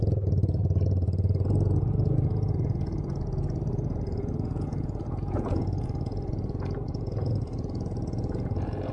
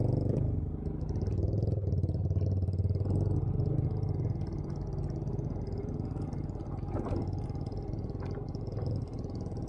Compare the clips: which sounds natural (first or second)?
second